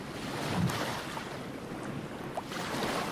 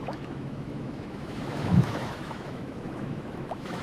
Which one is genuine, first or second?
first